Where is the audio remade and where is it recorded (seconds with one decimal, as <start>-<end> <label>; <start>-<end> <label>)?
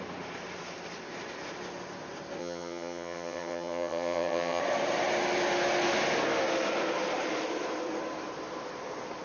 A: 0.0-2.4 recorded; 2.4-4.6 remade; 4.6-9.2 recorded